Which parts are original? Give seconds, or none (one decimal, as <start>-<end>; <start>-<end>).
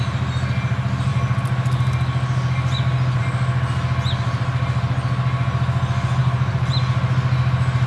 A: 0.0-6.2; 6.8-7.9